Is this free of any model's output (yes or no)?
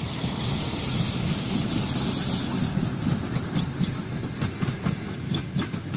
yes